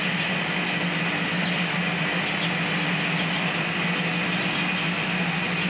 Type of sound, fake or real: real